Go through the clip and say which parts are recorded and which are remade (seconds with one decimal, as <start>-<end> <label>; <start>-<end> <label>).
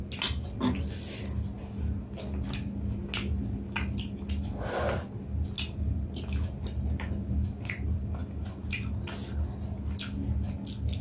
0.0-11.0 recorded